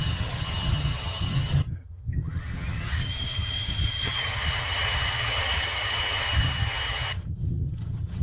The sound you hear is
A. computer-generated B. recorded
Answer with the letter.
A